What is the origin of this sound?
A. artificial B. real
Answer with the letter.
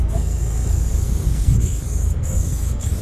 A